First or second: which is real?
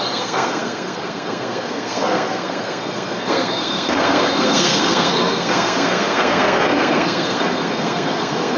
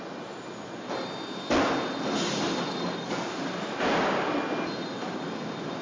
second